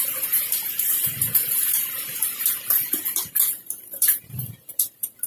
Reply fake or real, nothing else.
fake